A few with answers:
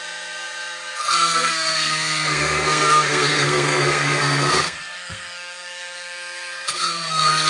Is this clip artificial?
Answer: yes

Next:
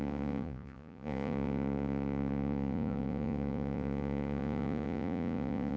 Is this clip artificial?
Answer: yes